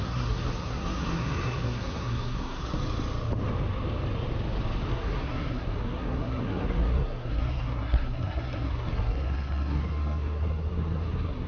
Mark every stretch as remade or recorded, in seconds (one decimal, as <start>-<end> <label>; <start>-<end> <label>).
0.0-2.8 remade; 2.8-4.9 recorded; 4.9-11.5 remade